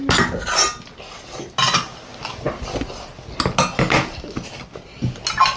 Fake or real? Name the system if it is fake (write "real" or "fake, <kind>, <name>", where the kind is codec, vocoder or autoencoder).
real